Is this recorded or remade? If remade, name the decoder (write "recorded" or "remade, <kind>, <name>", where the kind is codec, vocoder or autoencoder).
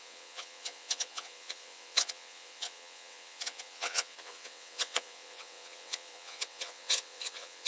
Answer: remade, vocoder, WaveNeXt